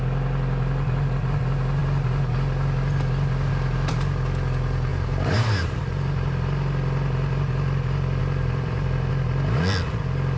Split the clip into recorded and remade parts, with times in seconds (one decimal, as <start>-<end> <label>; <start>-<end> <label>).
0.0-4.9 recorded; 4.9-6.3 remade; 6.3-8.2 recorded; 8.2-9.1 remade; 9.1-10.4 recorded